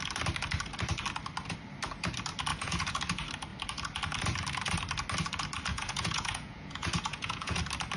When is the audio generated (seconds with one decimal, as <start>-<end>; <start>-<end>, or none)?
2.5-3.0; 5.7-7.6